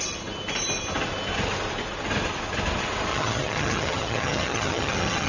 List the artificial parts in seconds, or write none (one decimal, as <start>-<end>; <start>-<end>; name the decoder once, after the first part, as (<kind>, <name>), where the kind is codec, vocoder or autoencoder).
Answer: 3.1-5.3 (vocoder, HiFi-GAN)